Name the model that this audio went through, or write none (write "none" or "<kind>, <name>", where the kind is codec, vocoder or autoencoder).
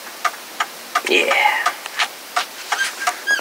none